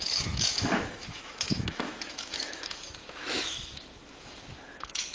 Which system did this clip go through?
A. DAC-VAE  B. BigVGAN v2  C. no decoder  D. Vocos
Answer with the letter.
A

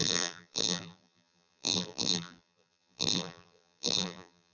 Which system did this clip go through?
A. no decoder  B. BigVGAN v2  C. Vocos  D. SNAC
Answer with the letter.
B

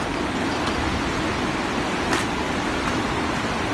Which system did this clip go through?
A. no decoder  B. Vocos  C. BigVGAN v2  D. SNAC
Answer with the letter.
A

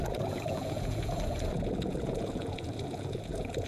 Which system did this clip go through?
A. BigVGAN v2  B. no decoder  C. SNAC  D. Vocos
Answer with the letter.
D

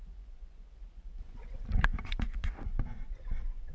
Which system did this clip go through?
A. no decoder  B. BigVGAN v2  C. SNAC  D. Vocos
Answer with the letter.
D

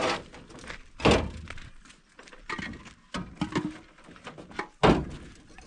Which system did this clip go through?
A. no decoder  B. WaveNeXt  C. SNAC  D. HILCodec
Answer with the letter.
A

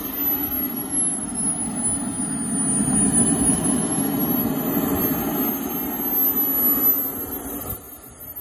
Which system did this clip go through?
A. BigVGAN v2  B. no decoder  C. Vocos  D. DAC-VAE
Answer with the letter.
B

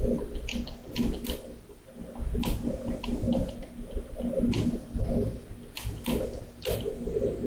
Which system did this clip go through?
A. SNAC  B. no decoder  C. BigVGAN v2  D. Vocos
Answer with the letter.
B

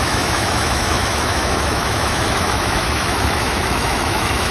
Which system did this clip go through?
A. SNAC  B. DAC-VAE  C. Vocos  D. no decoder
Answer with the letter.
B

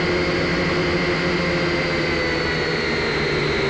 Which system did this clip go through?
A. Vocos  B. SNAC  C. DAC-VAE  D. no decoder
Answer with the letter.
D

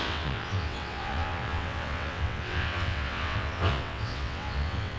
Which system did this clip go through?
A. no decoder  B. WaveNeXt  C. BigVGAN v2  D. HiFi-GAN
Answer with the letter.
B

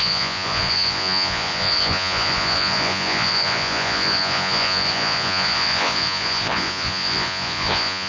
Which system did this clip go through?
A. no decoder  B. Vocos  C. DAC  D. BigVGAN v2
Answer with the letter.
B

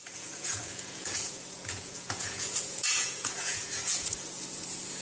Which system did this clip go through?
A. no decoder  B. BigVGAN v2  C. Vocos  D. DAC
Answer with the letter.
C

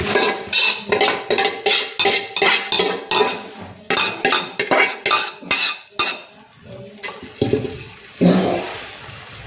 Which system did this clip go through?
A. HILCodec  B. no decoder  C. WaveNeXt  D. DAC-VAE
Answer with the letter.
B